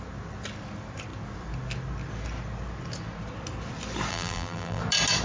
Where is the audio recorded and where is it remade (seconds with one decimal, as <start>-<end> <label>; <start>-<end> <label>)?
0.0-4.1 recorded; 4.1-4.8 remade; 4.8-5.2 recorded